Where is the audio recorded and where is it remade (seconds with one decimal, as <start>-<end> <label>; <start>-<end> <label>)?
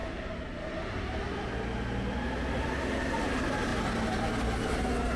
0.0-5.2 recorded